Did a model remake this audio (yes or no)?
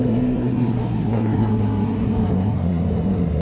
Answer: yes